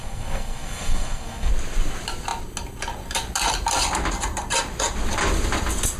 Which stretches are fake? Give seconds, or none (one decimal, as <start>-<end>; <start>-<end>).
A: 0.0-1.5